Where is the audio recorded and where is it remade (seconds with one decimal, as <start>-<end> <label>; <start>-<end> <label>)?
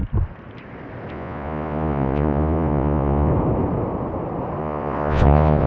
0.0-1.1 recorded; 1.1-3.3 remade; 3.3-4.6 recorded; 4.6-5.7 remade